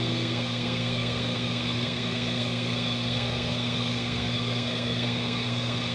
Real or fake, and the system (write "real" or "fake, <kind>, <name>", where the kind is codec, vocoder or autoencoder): fake, codec, SNAC